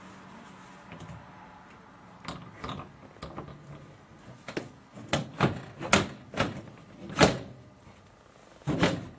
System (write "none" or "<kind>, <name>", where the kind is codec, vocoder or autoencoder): none